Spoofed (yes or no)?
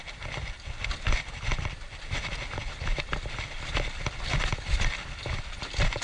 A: no